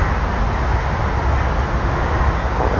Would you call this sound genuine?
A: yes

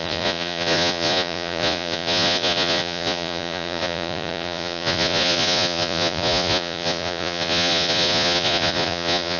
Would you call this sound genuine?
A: no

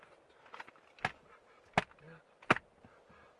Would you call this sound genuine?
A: yes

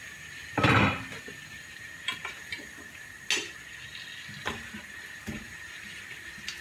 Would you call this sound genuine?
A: yes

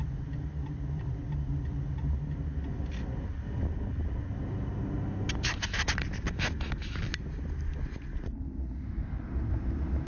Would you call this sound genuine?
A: yes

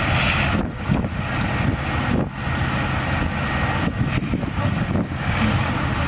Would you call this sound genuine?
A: yes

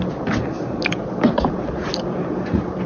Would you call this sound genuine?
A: yes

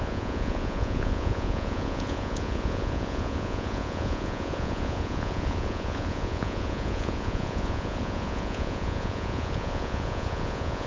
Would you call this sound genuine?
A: no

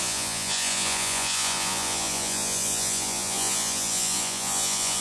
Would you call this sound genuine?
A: no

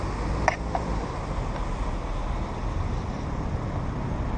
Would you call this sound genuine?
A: yes